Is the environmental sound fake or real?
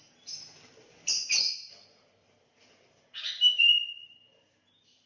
fake